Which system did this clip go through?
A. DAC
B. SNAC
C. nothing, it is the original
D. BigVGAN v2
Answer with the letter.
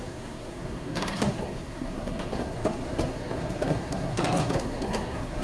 B